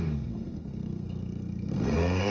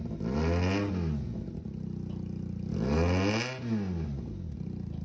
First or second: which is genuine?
second